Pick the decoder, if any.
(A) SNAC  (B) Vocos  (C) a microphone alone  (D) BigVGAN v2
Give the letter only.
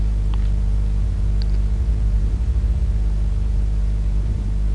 D